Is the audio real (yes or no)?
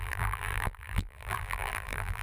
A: no